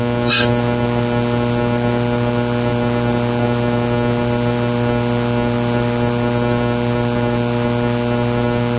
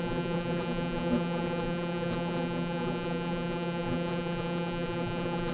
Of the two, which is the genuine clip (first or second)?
first